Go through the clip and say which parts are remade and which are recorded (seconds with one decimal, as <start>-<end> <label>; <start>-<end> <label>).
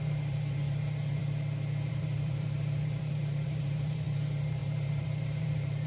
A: 0.0-1.2 remade; 1.2-1.9 recorded; 1.9-5.9 remade